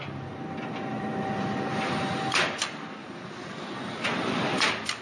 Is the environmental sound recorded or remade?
recorded